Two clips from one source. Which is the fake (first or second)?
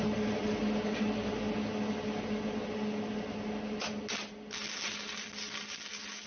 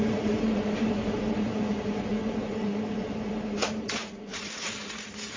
second